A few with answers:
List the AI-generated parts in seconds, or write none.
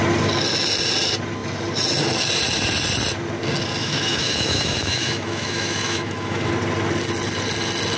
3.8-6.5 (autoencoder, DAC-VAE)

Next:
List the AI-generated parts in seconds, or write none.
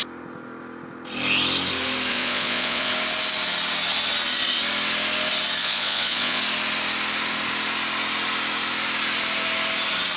2.1-2.9 (vocoder, Vocos); 5.6-6.4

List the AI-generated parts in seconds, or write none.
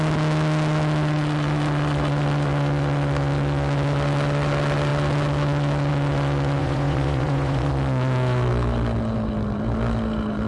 6.6-7.7 (vocoder, Vocos)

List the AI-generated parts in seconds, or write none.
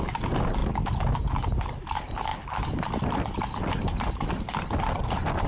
none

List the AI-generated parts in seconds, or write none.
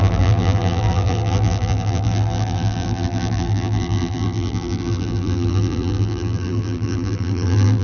0.0-7.8 (vocoder, BigVGAN v2)